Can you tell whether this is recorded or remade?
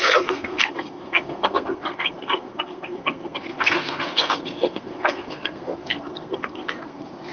remade